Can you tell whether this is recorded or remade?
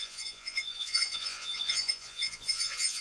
remade